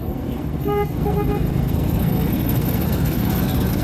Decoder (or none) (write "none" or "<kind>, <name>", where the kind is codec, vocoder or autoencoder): codec, SNAC